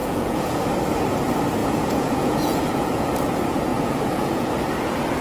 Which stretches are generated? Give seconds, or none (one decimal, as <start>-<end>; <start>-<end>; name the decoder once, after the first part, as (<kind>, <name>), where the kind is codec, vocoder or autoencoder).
0.0-0.6 (vocoder, Vocos); 1.6-3.1; 3.7-4.5